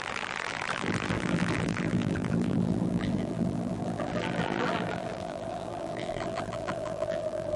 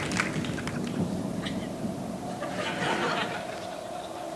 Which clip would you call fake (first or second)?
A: first